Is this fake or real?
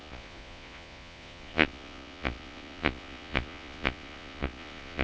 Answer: fake